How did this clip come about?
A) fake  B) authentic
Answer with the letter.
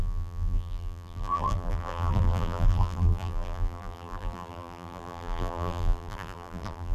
A